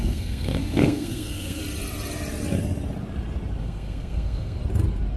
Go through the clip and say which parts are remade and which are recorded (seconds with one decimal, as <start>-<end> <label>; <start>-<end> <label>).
0.0-1.6 remade; 1.6-3.6 recorded; 3.6-4.6 remade; 4.6-5.2 recorded